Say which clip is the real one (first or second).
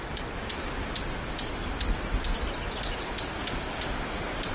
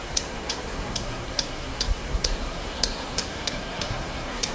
first